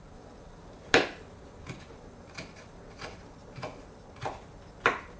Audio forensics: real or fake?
real